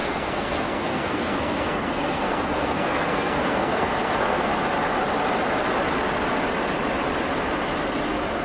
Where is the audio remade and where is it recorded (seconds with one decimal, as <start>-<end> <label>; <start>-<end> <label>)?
0.0-4.5 remade; 4.5-8.4 recorded